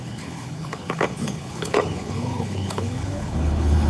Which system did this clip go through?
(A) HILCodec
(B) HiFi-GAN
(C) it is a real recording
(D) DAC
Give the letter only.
A